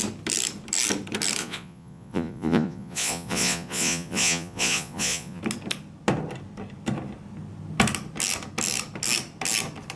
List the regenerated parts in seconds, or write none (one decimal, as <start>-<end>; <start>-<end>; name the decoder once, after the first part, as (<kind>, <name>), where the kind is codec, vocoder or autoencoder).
1.4-5.4 (vocoder, Vocos)